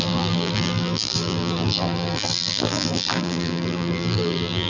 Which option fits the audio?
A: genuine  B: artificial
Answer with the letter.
B